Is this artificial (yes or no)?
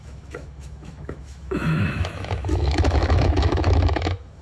yes